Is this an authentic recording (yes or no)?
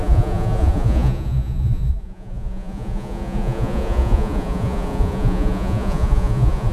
no